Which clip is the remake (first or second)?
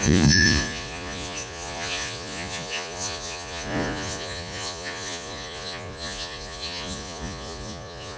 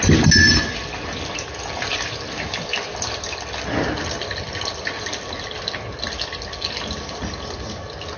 first